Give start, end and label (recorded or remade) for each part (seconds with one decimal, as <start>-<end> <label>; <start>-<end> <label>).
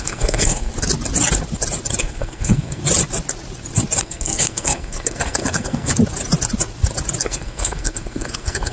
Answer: 0.0-0.7 remade; 0.7-2.0 recorded; 2.0-2.8 remade; 2.8-4.0 recorded; 4.0-5.9 remade; 5.9-7.2 recorded; 7.2-8.7 remade